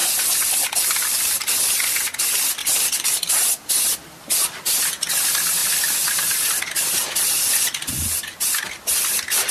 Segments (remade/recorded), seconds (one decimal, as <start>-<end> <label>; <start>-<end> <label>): 0.0-1.5 remade; 1.5-2.6 recorded; 2.6-5.1 remade; 5.1-9.5 recorded